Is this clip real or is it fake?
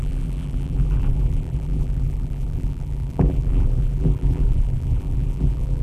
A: fake